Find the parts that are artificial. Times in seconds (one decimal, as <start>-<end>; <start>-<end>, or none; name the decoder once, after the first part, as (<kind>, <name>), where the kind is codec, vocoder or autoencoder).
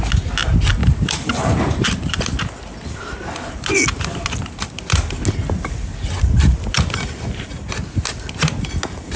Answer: 0.8-2.4 (vocoder, BigVGAN v2)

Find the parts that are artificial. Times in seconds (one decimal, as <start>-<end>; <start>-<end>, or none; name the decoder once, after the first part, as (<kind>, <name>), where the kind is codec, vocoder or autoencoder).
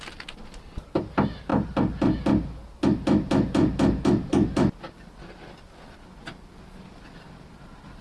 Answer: none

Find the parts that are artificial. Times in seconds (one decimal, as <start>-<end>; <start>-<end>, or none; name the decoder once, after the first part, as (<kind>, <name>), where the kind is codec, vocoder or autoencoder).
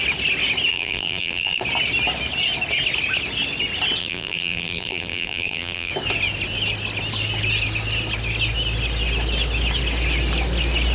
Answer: 0.7-1.6 (vocoder, BigVGAN v2); 4.0-5.9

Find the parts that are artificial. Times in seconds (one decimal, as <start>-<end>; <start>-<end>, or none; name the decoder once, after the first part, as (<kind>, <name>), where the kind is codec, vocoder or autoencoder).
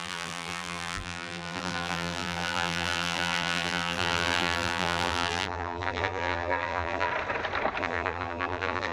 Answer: 0.0-7.1 (vocoder, BigVGAN v2); 7.8-8.9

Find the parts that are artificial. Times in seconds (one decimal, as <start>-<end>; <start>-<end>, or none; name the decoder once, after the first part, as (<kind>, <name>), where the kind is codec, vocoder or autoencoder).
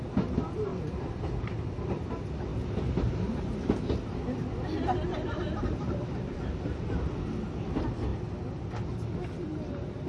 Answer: 0.7-1.5 (vocoder, BigVGAN v2); 2.5-3.8; 5.1-7.0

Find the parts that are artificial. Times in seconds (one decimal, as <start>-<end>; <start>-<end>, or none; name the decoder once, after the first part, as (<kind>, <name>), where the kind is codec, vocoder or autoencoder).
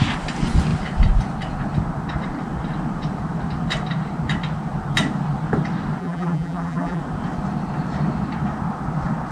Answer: 6.0-7.0 (vocoder, BigVGAN v2)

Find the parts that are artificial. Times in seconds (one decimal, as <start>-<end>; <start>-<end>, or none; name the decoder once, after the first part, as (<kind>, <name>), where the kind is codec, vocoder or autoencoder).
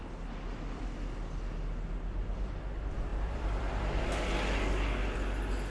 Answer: 3.1-4.0 (vocoder, BigVGAN v2)